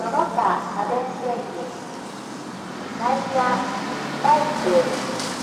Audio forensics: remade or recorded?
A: recorded